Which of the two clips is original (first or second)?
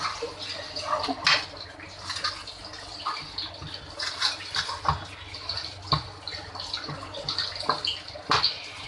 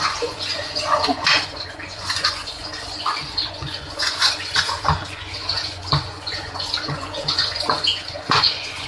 first